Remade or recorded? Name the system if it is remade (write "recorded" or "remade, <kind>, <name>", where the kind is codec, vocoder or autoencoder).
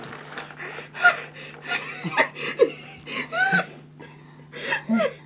recorded